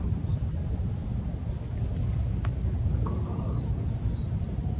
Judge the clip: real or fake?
real